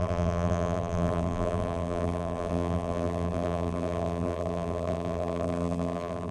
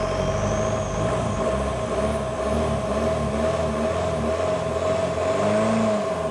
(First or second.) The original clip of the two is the second